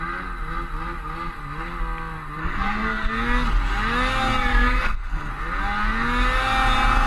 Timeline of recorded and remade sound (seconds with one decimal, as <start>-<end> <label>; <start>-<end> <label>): 0.0-2.4 recorded; 2.4-3.1 remade; 3.1-4.5 recorded; 4.5-5.3 remade; 5.3-7.1 recorded